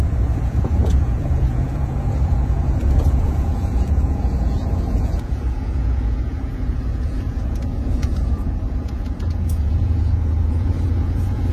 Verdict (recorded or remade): remade